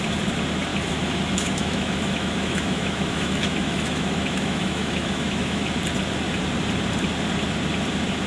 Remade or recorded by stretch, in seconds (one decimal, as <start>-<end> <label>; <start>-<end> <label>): 0.0-0.7 recorded; 0.7-5.7 remade; 5.7-8.3 recorded